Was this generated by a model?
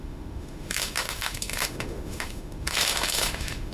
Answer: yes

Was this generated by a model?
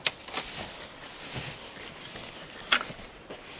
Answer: no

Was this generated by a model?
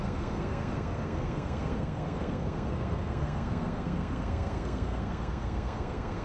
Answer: yes